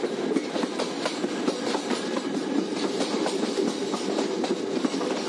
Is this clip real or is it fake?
real